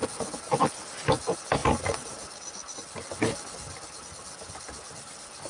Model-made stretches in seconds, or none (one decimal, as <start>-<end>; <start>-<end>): none